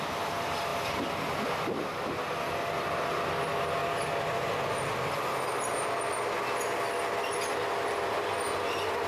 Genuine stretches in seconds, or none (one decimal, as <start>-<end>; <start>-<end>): 0.0-9.1